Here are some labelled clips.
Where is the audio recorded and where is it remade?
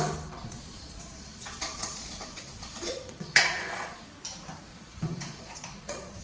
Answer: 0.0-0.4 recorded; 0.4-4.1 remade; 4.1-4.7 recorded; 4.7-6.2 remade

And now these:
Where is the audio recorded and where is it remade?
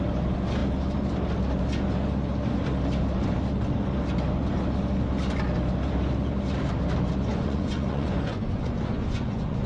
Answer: 0.0-7.3 recorded; 7.3-9.7 remade